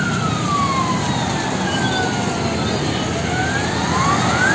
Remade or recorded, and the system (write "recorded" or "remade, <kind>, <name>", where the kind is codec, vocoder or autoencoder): recorded